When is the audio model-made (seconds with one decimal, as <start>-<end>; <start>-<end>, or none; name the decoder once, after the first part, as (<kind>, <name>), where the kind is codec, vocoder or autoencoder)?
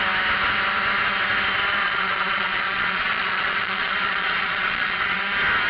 1.8-5.2 (vocoder, Vocos)